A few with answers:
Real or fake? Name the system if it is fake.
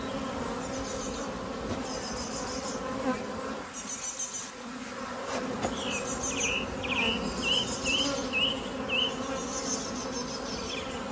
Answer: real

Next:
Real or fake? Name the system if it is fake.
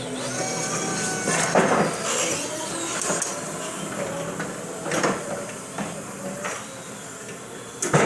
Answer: real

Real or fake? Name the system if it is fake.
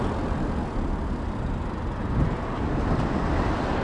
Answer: real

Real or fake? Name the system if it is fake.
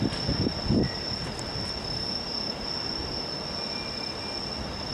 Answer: real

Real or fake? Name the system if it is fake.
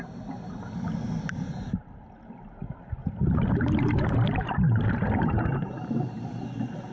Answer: real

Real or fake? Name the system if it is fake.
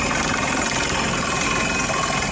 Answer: real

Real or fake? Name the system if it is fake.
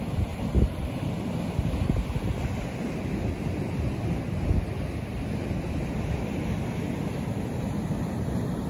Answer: real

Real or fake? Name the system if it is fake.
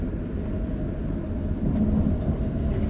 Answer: real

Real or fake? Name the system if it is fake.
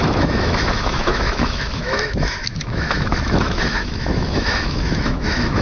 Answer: fake, autoencoder, DAC-VAE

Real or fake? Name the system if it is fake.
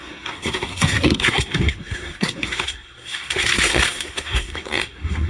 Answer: fake, codec, SNAC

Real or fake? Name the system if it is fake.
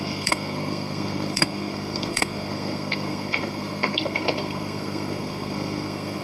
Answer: fake, codec, SNAC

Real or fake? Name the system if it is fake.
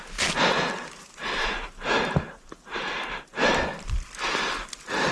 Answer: real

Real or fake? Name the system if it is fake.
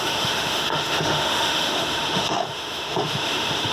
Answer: fake, autoencoder, DAC-VAE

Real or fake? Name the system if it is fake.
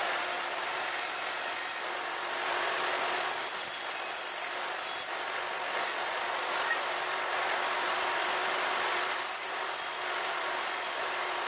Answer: real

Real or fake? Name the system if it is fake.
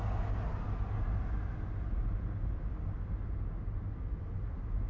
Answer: real